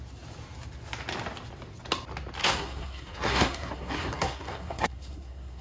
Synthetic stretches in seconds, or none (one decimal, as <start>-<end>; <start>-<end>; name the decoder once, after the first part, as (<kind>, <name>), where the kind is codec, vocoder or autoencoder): 2.4-5.6 (codec, SNAC)